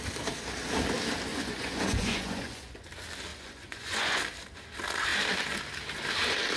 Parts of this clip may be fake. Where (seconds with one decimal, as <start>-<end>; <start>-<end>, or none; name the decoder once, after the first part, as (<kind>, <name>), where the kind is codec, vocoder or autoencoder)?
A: 1.3-2.9 (vocoder, Vocos); 3.3-4.2